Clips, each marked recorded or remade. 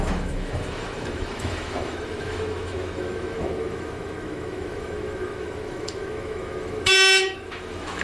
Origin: remade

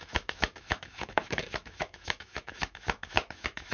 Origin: remade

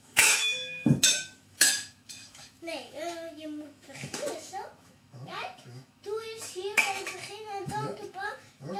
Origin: remade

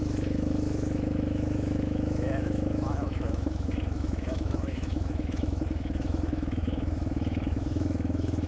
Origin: remade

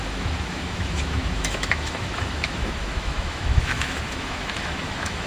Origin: remade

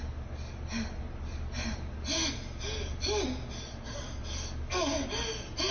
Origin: recorded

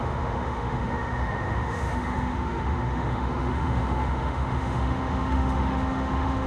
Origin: remade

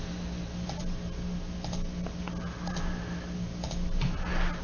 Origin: recorded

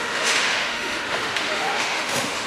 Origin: remade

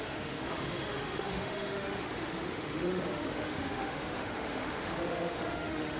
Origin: remade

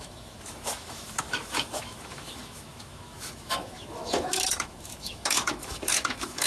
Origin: remade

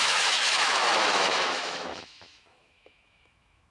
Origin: remade